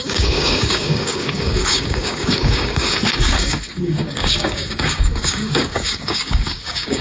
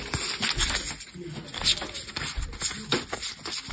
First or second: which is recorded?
second